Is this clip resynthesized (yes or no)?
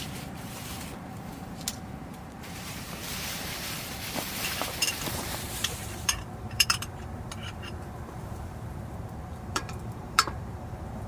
yes